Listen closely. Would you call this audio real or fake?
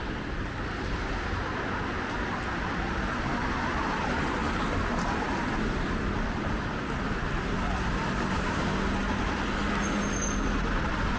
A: real